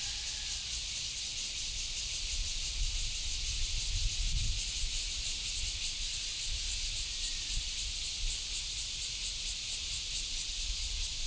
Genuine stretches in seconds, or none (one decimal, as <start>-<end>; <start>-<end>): 0.0-7.3